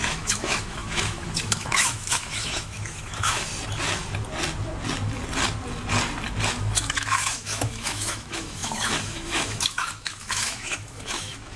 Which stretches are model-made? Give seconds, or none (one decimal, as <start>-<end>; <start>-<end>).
0.0-3.5; 6.6-11.6